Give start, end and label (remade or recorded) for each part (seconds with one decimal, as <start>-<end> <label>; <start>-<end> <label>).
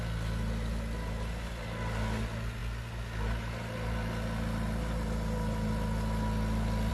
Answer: 0.0-6.9 recorded